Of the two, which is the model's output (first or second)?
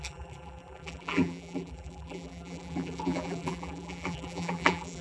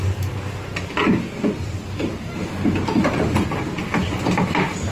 first